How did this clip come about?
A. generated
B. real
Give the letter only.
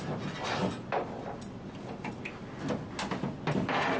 B